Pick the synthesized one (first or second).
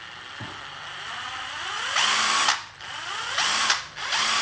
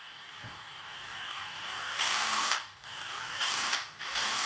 second